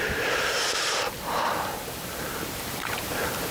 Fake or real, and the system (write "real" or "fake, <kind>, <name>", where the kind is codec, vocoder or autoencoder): fake, vocoder, BigVGAN v2